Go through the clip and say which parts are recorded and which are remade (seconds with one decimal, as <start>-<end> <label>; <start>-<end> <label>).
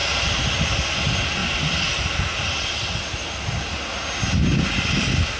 0.0-0.9 remade; 0.9-1.4 recorded; 1.4-3.7 remade; 3.7-5.4 recorded